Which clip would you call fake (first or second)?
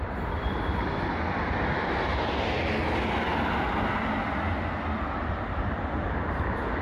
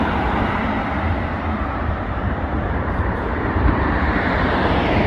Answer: second